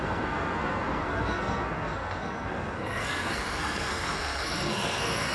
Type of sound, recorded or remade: remade